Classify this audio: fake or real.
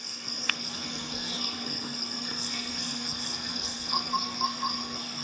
fake